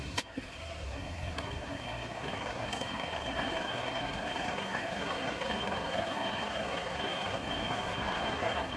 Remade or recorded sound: remade